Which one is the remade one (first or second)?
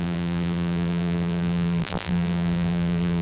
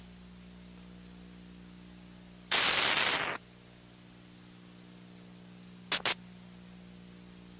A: first